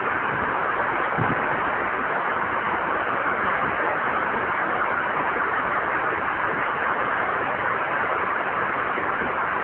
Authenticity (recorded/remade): recorded